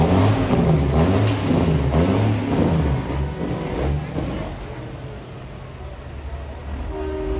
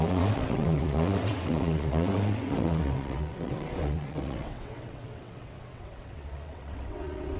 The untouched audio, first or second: first